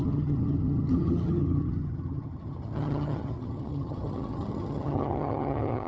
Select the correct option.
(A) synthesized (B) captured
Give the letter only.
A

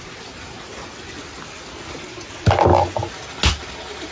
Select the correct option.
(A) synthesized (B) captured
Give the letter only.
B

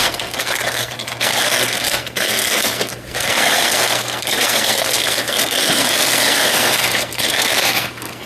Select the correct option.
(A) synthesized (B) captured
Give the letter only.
A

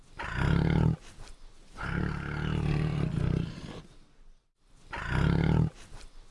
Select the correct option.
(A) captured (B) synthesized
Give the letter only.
A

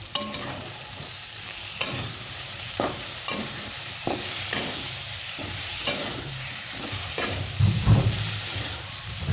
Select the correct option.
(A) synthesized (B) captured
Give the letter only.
A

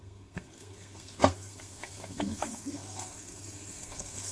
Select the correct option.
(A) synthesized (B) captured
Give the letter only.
A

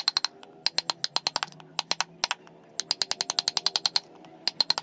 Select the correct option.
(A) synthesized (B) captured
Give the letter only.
B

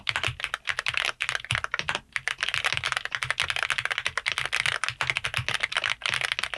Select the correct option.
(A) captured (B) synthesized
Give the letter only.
A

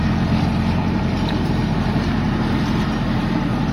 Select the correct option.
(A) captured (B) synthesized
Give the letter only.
B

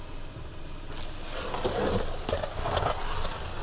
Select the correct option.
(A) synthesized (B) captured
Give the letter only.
B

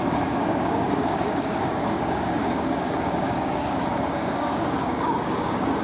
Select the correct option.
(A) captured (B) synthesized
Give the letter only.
B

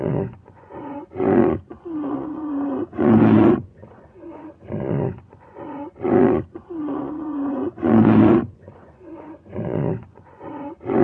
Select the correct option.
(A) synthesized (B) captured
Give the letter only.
A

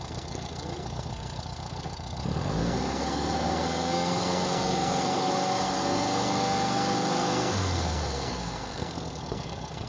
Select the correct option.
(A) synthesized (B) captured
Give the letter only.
A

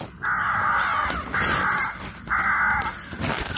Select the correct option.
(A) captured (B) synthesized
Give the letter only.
A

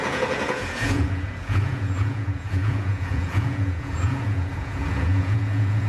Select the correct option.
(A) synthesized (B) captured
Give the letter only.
A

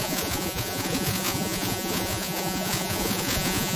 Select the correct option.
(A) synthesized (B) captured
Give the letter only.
A